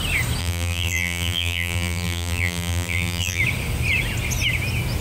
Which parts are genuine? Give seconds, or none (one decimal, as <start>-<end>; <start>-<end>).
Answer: 0.0-0.4; 3.4-5.0